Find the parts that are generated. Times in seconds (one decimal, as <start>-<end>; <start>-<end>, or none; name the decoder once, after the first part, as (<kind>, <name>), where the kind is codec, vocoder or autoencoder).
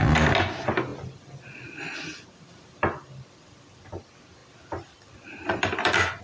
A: 0.9-3.9 (vocoder, BigVGAN v2); 4.4-6.2